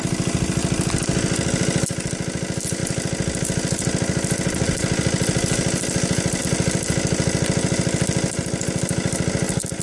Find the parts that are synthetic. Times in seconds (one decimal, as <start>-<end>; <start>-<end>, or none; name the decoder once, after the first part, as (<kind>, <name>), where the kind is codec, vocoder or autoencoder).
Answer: none